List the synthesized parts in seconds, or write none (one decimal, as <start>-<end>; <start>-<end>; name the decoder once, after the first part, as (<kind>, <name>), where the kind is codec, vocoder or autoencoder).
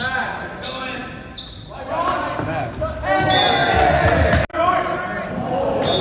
3.6-4.1 (vocoder, Vocos)